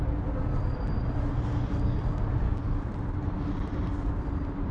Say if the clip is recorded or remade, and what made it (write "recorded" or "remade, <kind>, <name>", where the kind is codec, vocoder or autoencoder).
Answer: recorded